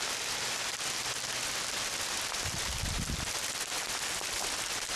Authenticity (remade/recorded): recorded